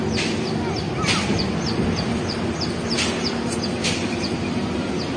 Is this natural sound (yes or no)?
yes